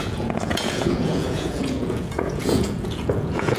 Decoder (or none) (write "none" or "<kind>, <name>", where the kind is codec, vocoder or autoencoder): vocoder, Vocos